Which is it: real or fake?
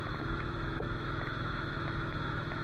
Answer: fake